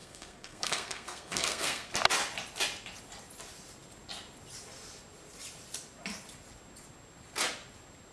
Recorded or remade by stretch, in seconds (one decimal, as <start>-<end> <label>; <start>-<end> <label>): 0.0-1.9 remade; 1.9-8.1 recorded